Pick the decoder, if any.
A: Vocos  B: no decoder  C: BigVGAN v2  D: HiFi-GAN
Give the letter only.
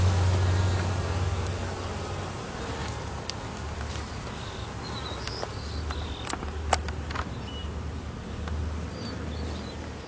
B